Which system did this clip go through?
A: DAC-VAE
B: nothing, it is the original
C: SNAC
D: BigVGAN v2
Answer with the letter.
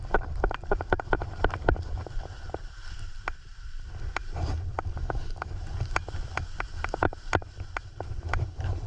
B